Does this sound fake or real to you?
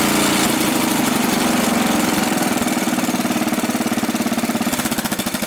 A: real